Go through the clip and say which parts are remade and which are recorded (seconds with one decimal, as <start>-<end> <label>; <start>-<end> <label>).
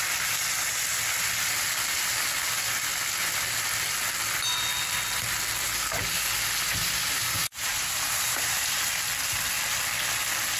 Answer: 0.0-6.8 recorded; 6.8-8.8 remade; 8.8-10.6 recorded